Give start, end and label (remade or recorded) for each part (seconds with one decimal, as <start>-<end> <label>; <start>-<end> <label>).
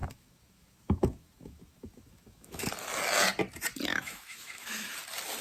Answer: 0.0-2.7 remade; 2.7-3.9 recorded; 3.9-4.9 remade; 4.9-5.4 recorded